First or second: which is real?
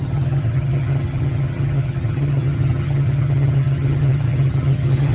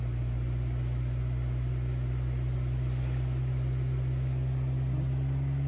second